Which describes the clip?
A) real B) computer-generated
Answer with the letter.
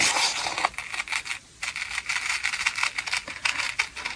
A